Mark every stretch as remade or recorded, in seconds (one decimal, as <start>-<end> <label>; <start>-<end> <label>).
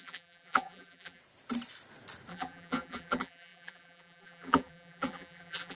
0.0-1.2 remade; 1.2-2.3 recorded; 2.3-5.7 remade